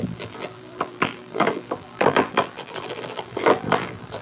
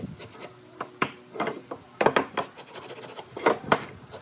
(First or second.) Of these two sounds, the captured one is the second